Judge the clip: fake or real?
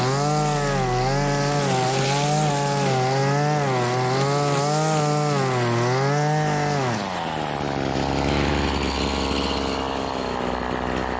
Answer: real